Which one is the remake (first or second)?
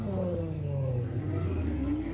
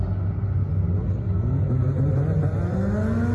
first